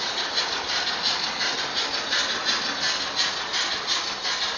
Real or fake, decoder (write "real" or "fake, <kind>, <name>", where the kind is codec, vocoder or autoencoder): real